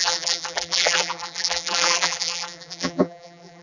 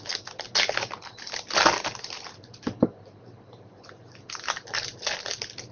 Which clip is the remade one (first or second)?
first